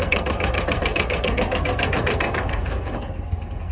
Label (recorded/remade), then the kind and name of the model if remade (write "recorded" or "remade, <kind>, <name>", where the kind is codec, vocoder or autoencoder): remade, codec, SNAC